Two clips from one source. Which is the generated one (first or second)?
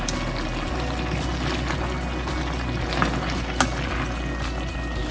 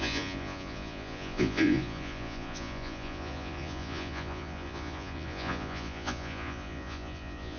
second